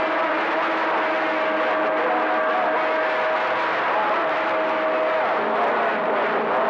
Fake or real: real